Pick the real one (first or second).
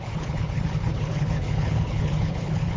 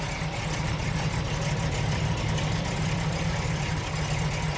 second